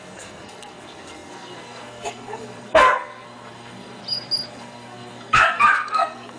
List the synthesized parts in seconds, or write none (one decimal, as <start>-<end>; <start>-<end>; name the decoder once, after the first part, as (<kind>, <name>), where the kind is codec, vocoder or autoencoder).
0.0-4.0 (codec, SNAC); 4.5-6.4